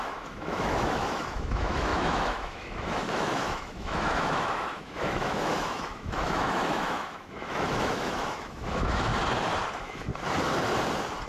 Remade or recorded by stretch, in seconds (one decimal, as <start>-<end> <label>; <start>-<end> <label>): 0.0-9.1 remade; 9.1-9.7 recorded; 9.7-10.1 remade; 10.1-11.3 recorded